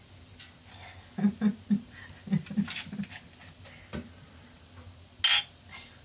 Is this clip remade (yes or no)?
no